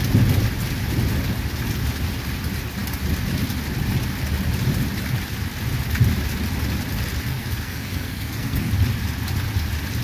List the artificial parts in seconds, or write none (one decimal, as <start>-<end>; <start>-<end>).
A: 7.3-8.7